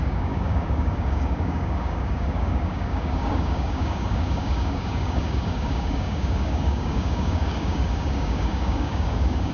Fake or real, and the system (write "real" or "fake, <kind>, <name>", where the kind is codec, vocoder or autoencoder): fake, codec, DAC